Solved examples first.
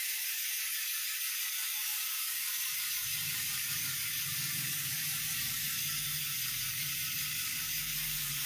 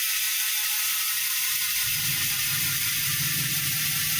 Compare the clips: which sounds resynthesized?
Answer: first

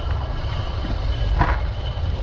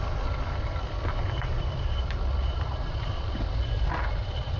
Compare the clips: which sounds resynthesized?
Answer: second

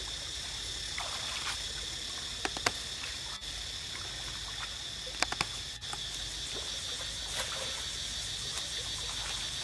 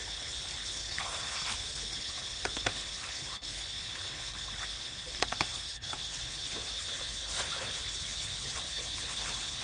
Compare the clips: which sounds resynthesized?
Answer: second